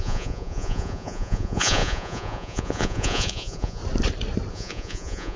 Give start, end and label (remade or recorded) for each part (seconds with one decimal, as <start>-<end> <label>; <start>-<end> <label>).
0.0-3.8 remade; 3.8-4.5 recorded; 4.5-5.4 remade